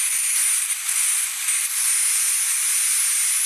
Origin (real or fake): real